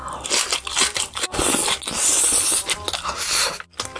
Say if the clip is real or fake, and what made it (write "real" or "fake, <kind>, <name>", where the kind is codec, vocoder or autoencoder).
real